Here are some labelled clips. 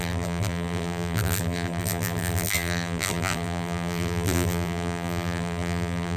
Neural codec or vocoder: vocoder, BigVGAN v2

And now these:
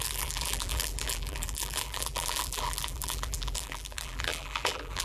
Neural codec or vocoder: vocoder, BigVGAN v2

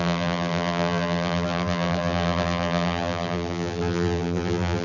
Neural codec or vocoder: vocoder, BigVGAN v2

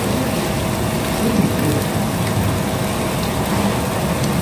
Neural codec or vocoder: none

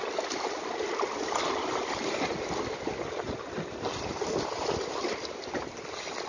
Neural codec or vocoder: none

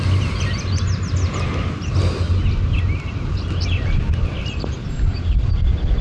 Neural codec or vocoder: none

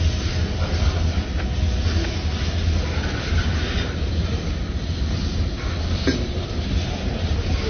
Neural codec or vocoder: none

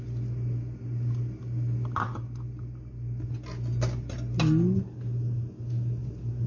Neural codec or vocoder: none